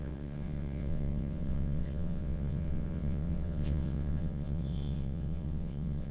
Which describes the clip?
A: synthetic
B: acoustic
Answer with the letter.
A